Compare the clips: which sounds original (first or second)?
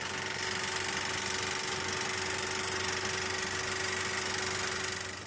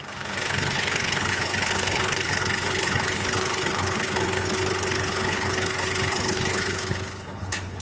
first